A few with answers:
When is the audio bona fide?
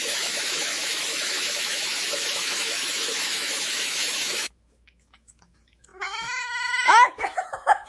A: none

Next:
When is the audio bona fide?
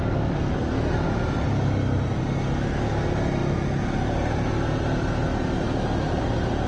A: 0.0-6.7